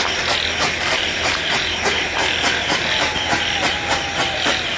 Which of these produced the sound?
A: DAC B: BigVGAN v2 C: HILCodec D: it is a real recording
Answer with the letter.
D